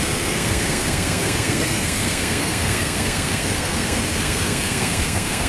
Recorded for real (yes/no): no